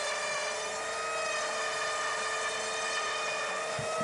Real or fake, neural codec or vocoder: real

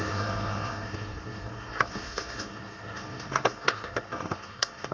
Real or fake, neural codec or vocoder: fake, codec, SNAC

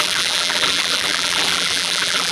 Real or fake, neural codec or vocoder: fake, vocoder, BigVGAN v2